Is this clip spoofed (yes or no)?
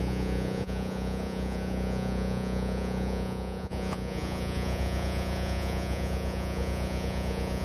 yes